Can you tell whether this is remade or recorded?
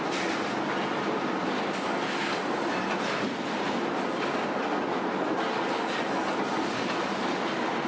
recorded